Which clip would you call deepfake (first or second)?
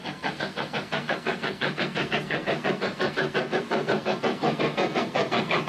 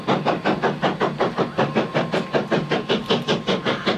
first